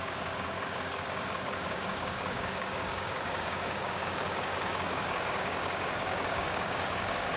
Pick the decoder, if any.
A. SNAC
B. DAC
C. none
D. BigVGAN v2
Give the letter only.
B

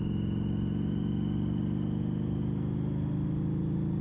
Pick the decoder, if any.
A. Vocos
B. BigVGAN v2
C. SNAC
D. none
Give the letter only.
D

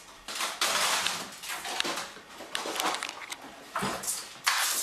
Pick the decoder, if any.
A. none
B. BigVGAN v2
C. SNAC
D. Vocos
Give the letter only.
A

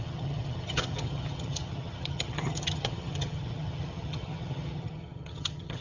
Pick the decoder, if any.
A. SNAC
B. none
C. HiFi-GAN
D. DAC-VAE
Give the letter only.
C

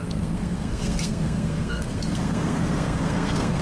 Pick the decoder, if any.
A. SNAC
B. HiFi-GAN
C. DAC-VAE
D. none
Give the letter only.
A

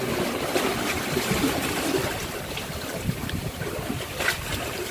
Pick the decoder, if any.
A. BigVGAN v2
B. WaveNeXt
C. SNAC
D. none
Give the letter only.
A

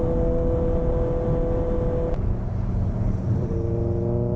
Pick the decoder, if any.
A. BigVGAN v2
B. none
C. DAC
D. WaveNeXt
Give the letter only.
B